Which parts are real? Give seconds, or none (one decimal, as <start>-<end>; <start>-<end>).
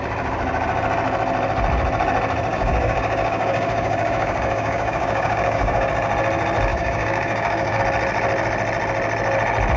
0.0-2.5; 5.9-6.7; 7.8-9.8